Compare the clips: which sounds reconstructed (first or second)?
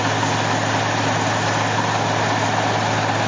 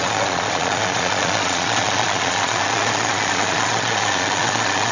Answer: second